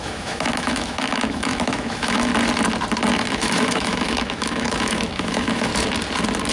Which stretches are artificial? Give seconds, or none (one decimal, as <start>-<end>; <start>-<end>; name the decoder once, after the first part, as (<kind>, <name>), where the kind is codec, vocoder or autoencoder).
0.0-2.3 (autoencoder, DAC-VAE); 3.1-5.7